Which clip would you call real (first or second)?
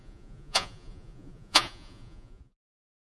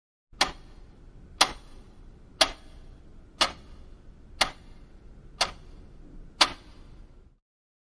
second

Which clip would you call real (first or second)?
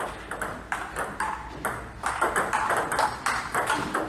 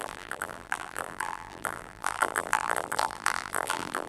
first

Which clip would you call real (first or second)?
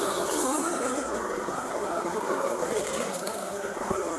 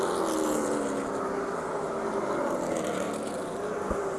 second